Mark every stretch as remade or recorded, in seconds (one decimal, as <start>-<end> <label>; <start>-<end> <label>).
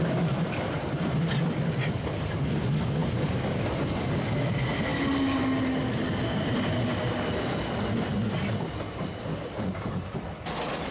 0.0-10.9 recorded